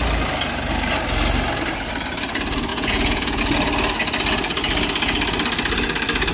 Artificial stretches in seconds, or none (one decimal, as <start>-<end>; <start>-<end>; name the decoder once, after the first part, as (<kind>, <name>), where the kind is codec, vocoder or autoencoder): 2.7-3.4 (vocoder, Vocos)